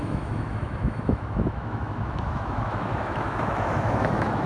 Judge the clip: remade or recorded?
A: remade